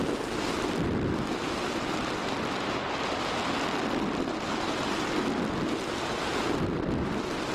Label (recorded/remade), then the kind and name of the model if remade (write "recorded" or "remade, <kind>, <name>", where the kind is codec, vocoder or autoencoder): recorded